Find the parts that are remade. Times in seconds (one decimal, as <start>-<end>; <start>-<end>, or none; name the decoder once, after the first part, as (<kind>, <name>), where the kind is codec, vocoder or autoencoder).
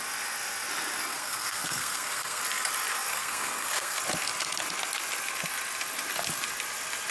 1.1-2.4 (codec, SNAC); 3.1-4.0